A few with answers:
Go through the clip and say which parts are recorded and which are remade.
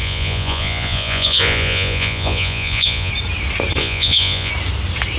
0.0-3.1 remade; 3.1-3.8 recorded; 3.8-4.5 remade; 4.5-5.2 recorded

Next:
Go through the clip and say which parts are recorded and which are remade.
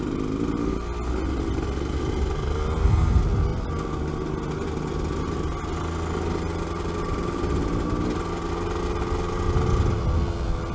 0.0-10.7 recorded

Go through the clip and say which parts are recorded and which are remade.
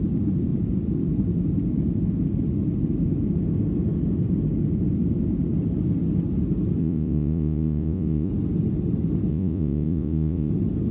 0.0-6.8 recorded; 6.8-8.3 remade; 8.3-9.3 recorded; 9.3-10.5 remade; 10.5-10.9 recorded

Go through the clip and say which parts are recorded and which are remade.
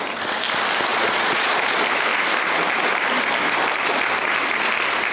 0.0-0.9 recorded; 0.9-1.5 remade; 1.5-5.1 recorded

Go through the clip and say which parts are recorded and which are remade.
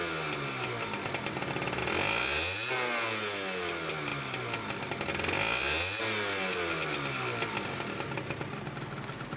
0.0-9.4 recorded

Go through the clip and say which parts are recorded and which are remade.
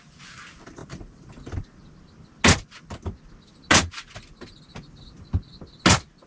0.0-6.3 recorded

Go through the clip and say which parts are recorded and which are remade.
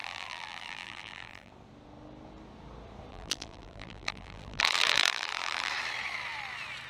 0.0-1.5 remade; 1.5-3.1 recorded; 3.1-5.7 remade; 5.7-6.9 recorded